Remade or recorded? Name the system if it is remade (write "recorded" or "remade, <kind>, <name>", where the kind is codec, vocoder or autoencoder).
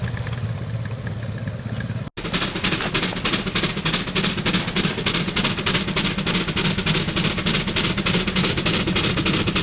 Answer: recorded